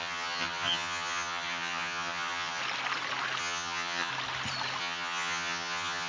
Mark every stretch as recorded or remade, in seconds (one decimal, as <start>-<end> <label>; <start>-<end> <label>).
0.0-2.6 remade; 2.6-3.4 recorded; 3.4-4.1 remade; 4.1-4.8 recorded; 4.8-6.1 remade